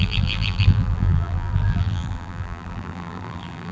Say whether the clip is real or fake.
fake